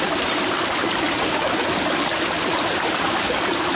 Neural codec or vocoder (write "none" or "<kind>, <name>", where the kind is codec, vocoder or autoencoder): none